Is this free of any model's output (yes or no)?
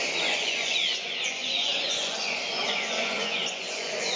no